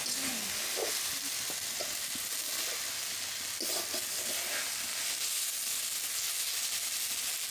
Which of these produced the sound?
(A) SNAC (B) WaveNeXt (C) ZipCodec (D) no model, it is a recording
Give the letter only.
D